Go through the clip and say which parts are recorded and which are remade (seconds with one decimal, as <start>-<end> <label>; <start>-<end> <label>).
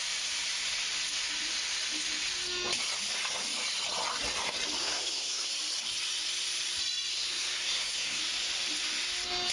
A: 0.0-4.8 recorded; 4.8-5.5 remade; 5.5-7.1 recorded; 7.1-8.2 remade; 8.2-9.5 recorded